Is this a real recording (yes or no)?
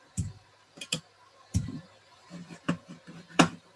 no